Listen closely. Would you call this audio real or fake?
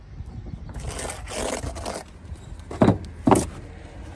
real